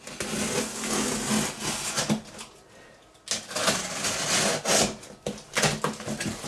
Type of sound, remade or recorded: recorded